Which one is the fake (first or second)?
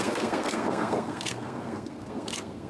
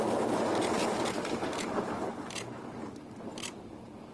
first